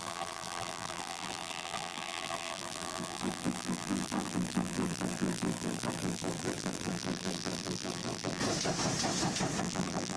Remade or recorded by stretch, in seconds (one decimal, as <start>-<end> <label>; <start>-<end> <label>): 0.0-8.4 remade; 8.4-9.6 recorded; 9.6-10.2 remade